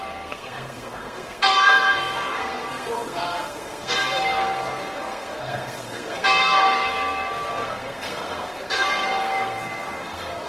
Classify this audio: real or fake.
fake